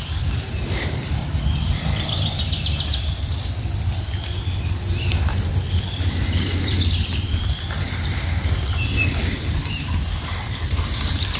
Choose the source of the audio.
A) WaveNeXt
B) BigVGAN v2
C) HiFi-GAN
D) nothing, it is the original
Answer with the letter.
B